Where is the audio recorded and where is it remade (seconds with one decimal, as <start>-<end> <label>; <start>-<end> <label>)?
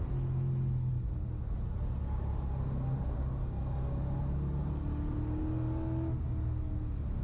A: 0.0-7.2 recorded